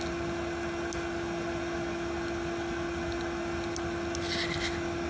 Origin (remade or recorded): recorded